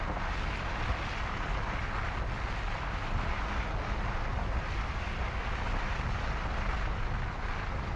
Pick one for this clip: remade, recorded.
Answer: recorded